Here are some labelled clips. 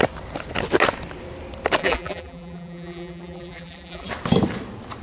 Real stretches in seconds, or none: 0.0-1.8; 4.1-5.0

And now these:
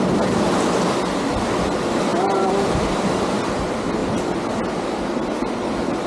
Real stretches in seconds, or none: 0.0-2.1; 3.1-6.1

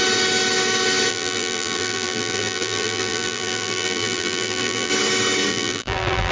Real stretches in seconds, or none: 0.0-1.1; 4.9-5.5